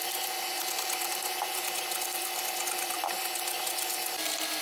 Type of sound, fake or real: fake